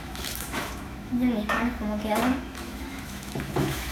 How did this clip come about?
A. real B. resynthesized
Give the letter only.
B